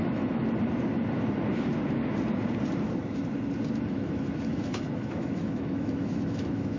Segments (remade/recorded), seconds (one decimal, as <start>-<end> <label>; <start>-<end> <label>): 0.0-0.4 remade; 0.4-3.9 recorded; 3.9-6.8 remade